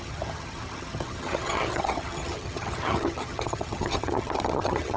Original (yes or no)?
no